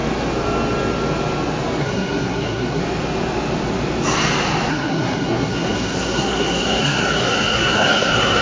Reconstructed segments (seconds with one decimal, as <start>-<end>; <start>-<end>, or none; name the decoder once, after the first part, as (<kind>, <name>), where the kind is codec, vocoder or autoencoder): 1.8-2.8 (codec, SNAC); 4.7-8.4